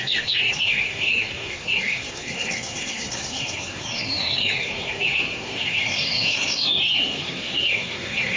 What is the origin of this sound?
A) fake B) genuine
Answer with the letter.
A